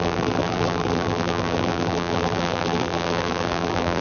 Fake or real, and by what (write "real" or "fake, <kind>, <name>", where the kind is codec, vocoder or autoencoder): fake, vocoder, BigVGAN v2